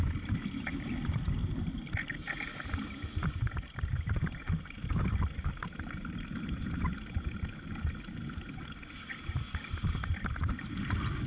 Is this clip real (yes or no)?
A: yes